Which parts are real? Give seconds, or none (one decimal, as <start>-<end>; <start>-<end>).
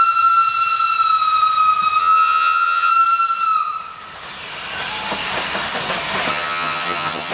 0.0-2.0; 2.9-6.3